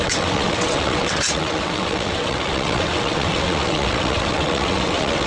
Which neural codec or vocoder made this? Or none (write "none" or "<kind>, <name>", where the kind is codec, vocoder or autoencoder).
vocoder, WaveNeXt